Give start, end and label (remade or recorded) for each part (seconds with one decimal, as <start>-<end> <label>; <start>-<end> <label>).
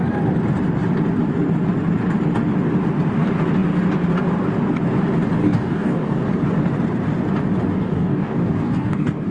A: 0.0-5.4 recorded; 5.4-6.2 remade; 6.2-7.7 recorded; 7.7-9.3 remade